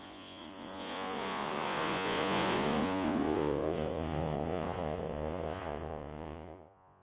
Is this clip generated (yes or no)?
yes